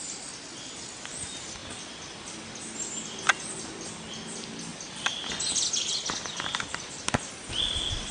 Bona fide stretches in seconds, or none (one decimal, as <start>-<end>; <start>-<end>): 0.0-8.1